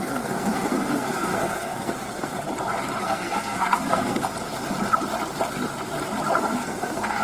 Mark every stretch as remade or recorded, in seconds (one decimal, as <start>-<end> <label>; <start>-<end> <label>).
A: 0.0-2.3 remade; 2.3-3.0 recorded; 3.0-4.2 remade; 4.2-6.4 recorded; 6.4-7.2 remade